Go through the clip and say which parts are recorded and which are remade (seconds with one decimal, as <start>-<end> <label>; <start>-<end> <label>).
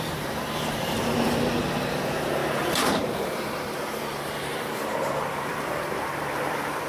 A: 0.0-6.9 remade